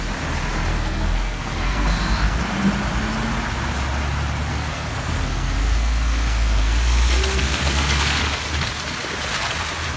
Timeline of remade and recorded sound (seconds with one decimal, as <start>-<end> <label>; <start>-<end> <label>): 0.0-0.7 recorded; 0.7-2.4 remade; 2.4-4.5 recorded; 4.5-8.2 remade; 8.2-10.0 recorded